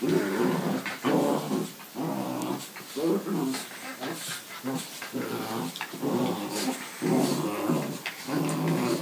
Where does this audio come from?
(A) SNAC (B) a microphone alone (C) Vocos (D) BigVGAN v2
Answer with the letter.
B